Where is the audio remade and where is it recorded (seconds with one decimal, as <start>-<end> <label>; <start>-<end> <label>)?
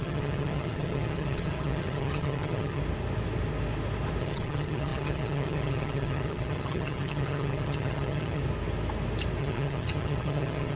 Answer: 0.0-2.8 remade; 2.8-4.2 recorded; 4.2-8.4 remade; 8.4-9.4 recorded; 9.4-10.8 remade